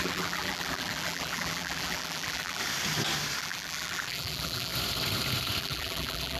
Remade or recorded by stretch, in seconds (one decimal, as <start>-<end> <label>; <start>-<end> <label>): 0.0-2.6 remade; 2.6-3.4 recorded; 3.4-4.7 remade; 4.7-5.6 recorded; 5.6-6.4 remade

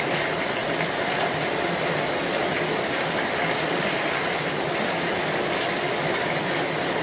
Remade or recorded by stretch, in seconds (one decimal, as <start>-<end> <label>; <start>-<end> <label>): 0.0-7.0 recorded